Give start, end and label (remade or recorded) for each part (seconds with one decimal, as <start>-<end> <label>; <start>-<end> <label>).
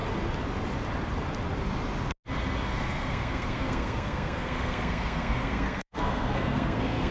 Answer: 0.0-2.7 recorded; 2.7-7.1 remade